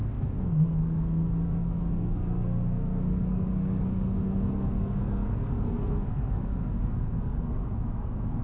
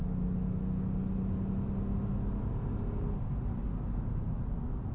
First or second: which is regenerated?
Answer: first